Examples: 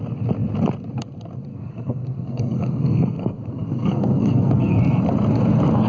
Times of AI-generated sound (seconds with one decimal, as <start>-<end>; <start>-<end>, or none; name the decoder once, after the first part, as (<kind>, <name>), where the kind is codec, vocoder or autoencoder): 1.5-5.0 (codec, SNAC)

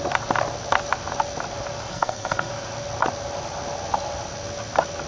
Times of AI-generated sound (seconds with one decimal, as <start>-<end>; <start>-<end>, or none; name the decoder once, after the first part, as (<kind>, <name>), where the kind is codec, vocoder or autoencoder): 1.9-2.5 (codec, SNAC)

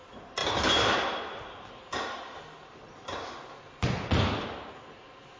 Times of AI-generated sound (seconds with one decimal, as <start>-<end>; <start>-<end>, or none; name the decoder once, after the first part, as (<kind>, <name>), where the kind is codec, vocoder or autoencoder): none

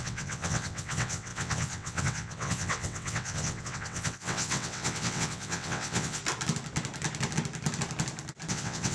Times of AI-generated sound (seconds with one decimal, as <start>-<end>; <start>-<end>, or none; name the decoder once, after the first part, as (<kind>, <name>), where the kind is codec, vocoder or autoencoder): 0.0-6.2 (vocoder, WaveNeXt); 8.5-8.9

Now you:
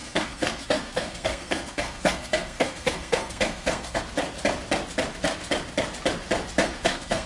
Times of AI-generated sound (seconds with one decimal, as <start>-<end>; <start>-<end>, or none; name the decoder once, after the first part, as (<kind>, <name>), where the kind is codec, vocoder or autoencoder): 0.0-4.0 (codec, SNAC); 6.6-7.3

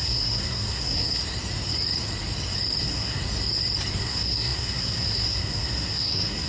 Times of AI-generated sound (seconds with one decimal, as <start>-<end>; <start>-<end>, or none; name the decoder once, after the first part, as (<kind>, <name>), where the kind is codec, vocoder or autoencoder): 0.0-1.2 (codec, SNAC); 2.8-3.2; 4.0-6.5

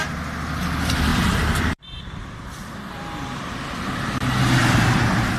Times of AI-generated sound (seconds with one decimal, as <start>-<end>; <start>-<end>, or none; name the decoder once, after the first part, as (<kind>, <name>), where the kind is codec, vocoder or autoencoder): 1.1-3.8 (vocoder, BigVGAN v2)